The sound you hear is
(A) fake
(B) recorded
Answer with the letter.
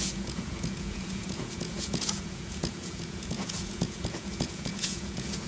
A